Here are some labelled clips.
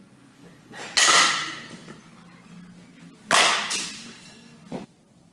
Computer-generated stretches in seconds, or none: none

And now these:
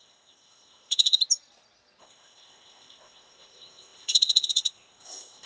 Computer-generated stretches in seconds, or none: 0.0-1.2; 2.0-5.5

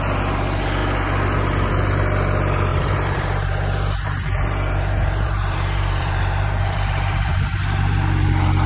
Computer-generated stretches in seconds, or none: 2.7-7.4

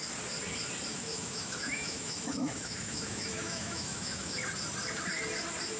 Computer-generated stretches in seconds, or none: 0.9-4.4

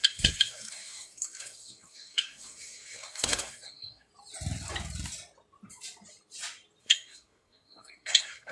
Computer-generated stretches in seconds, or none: 0.0-4.1; 6.8-8.5

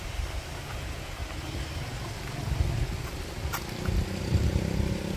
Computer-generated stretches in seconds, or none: 0.0-1.2; 4.2-5.2

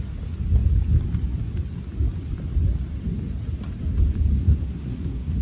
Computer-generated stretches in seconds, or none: 4.4-5.4